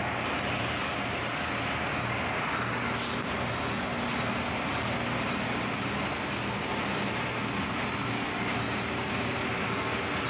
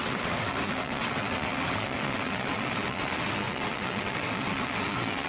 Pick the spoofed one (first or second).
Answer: second